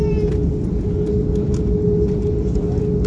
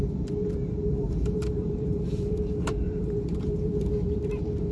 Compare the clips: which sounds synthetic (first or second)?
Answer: second